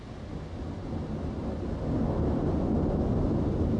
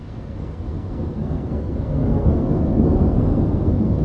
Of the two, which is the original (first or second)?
first